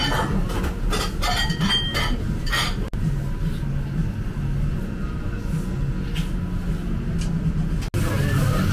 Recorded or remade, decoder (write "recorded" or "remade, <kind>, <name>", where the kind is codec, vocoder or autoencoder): recorded